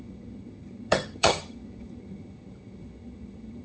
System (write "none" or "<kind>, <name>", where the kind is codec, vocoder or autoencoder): vocoder, HiFi-GAN